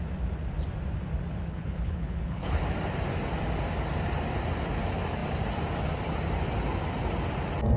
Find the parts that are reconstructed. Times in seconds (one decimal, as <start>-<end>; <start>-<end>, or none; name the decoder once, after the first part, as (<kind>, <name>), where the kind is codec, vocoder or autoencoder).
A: 1.5-2.6 (codec, HILCodec)